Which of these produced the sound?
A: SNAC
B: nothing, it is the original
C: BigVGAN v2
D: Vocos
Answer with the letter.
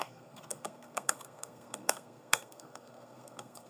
A